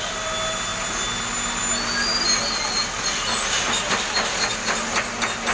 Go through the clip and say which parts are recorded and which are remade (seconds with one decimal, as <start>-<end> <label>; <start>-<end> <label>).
0.0-5.5 recorded